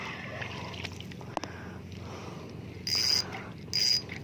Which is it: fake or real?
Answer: real